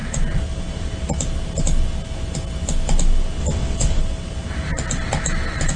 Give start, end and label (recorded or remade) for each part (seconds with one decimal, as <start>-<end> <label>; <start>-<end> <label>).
0.0-3.4 recorded; 3.4-4.0 remade; 4.0-5.8 recorded

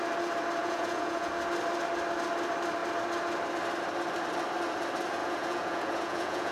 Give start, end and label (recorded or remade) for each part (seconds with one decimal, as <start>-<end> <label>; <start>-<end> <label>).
0.0-0.6 recorded; 0.6-1.3 remade; 1.3-5.2 recorded; 5.2-6.5 remade